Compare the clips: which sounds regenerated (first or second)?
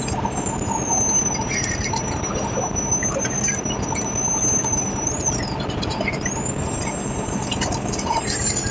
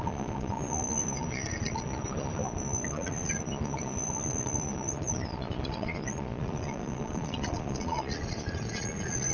second